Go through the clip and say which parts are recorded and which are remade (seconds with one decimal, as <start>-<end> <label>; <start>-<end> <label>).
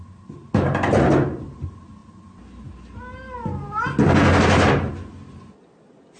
0.0-6.2 recorded